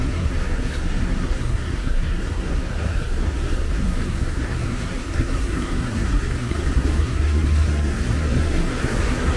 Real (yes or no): no